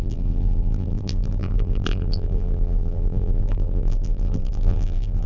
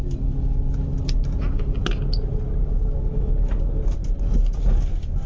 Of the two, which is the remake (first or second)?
first